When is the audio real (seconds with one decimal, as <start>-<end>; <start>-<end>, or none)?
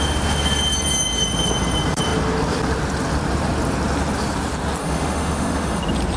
0.0-4.8; 5.8-6.2